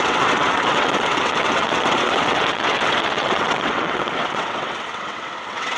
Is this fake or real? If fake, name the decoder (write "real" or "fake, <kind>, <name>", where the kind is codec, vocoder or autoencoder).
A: fake, vocoder, WaveNeXt